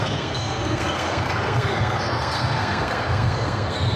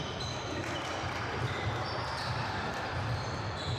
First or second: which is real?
second